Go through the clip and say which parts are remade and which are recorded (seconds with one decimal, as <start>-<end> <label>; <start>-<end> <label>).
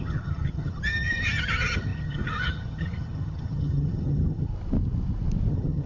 0.0-4.5 remade; 4.5-5.5 recorded; 5.5-5.9 remade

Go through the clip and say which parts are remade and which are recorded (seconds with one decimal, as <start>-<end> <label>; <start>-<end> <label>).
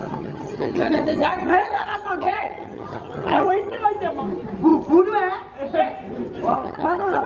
0.0-3.8 remade; 3.8-6.5 recorded; 6.5-7.3 remade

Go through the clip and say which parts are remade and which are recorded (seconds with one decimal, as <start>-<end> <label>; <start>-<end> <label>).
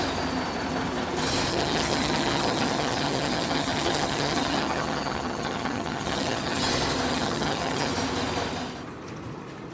0.0-1.5 recorded; 1.5-6.6 remade; 6.6-7.1 recorded; 7.1-7.9 remade; 7.9-9.7 recorded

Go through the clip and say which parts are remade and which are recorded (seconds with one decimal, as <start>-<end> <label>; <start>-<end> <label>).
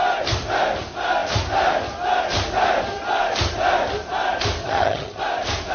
0.0-4.6 recorded; 4.6-5.2 remade; 5.2-5.7 recorded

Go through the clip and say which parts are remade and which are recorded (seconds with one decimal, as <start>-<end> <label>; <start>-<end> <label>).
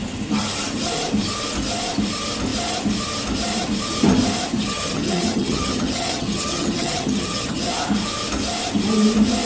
0.0-4.5 recorded; 4.5-7.7 remade; 7.7-9.5 recorded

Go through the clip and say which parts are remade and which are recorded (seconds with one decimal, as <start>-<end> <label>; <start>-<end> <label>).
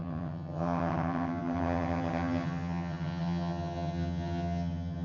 0.0-5.0 remade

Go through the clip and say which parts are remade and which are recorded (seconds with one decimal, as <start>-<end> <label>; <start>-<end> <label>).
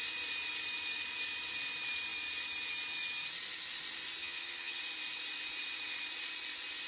0.0-4.2 recorded; 4.2-4.8 remade; 4.8-6.9 recorded